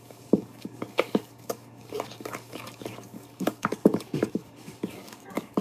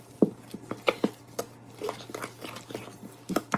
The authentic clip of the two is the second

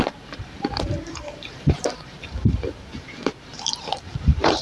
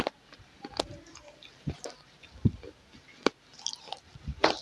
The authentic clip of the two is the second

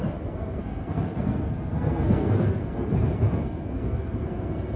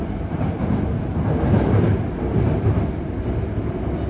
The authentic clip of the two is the second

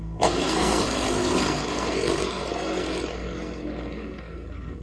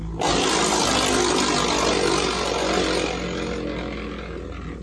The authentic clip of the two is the second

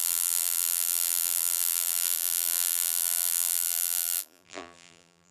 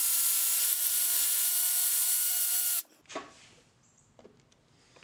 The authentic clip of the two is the second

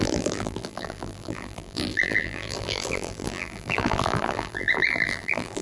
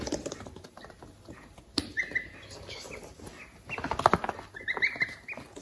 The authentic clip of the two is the second